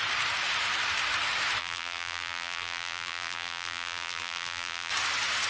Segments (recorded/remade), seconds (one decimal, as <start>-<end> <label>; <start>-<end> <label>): 0.0-1.6 recorded; 1.6-4.9 remade; 4.9-5.5 recorded